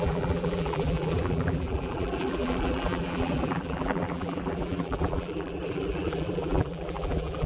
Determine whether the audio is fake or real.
fake